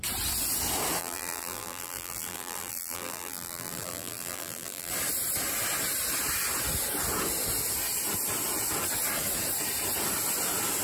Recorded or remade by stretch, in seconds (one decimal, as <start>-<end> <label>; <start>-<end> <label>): 0.0-1.0 recorded; 1.0-4.9 remade; 4.9-10.8 recorded